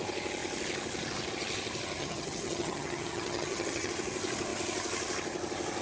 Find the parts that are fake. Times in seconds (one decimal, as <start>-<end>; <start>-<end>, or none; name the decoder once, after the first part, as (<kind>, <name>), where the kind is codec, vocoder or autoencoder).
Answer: 2.0-3.9 (vocoder, HiFi-GAN)